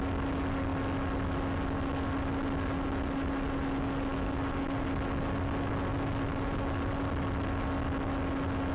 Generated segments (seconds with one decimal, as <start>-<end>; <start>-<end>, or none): none